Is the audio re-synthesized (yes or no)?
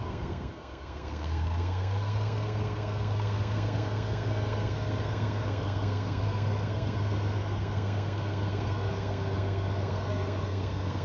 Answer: yes